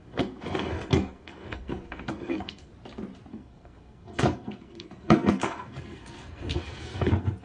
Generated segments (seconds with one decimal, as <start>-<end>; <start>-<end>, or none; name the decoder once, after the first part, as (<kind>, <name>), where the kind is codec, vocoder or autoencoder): 0.0-2.7 (codec, SNAC); 3.3-7.4